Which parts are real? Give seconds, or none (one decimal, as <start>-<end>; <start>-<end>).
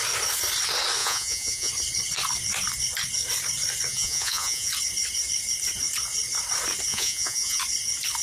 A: 0.0-1.0; 1.7-3.9; 4.7-6.9; 7.6-8.2